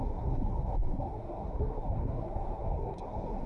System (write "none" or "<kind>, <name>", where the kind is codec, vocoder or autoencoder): codec, SNAC